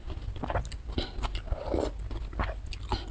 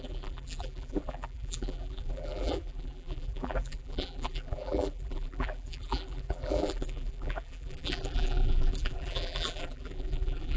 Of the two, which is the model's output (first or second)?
second